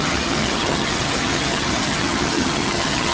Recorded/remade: remade